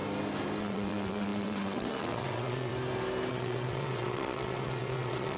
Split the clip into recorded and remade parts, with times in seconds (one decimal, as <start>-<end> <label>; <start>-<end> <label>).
0.0-0.6 recorded; 0.6-2.7 remade; 2.7-3.3 recorded; 3.3-5.4 remade